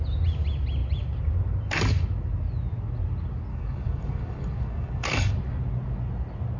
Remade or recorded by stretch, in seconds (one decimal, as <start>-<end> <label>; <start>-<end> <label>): 0.0-3.5 recorded; 3.5-5.3 remade; 5.3-6.6 recorded